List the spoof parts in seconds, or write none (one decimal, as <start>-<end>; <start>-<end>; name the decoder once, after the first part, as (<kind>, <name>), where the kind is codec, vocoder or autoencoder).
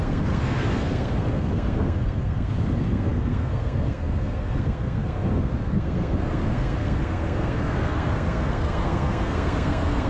0.0-10.1 (codec, SNAC)